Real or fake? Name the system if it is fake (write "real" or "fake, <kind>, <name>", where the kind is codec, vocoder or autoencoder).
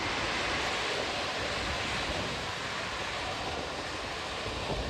real